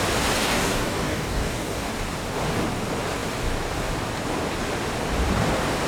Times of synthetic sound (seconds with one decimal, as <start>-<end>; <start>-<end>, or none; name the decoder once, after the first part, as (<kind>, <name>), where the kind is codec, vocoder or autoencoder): 0.4-1.9 (codec, DAC)